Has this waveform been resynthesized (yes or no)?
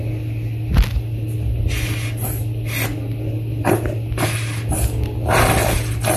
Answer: no